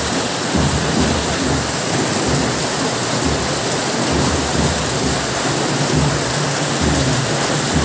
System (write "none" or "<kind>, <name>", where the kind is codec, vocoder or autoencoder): none